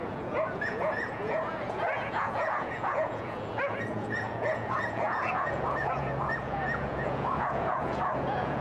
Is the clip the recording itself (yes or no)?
no